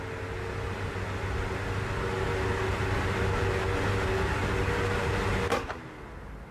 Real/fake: real